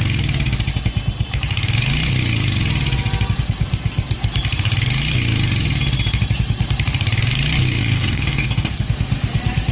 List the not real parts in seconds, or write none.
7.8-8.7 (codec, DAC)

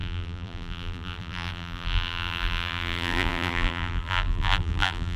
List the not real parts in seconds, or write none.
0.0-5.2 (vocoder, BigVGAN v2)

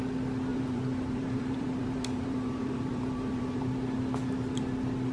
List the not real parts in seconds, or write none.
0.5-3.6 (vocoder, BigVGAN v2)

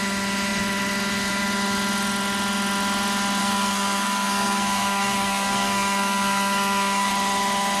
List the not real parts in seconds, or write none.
3.4-7.1 (codec, SNAC)

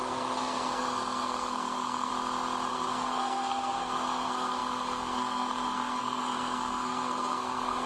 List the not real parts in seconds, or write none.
0.0-2.1 (codec, SNAC); 2.7-7.9

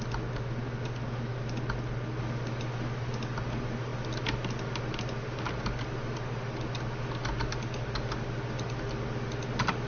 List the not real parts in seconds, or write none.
none